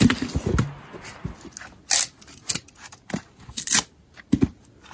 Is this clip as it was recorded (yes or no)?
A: yes